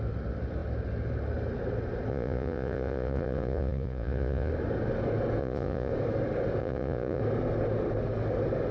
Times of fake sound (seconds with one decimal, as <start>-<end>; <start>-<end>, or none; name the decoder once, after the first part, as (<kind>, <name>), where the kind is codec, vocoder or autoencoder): 2.1-4.5 (vocoder, Vocos); 5.4-5.9; 6.6-7.2